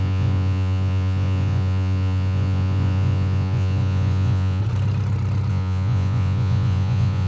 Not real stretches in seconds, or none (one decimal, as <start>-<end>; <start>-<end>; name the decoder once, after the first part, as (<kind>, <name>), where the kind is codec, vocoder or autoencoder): 0.0-4.6 (vocoder, Vocos); 5.5-7.3